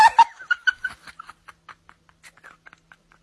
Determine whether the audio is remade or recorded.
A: recorded